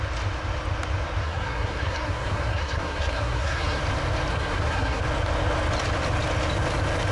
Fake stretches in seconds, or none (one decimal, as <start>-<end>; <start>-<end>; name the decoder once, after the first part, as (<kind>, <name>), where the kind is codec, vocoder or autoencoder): 1.2-3.8 (codec, SNAC); 4.3-5.0